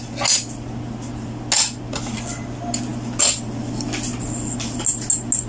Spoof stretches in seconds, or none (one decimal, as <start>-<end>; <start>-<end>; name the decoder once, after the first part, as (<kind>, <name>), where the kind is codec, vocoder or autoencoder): none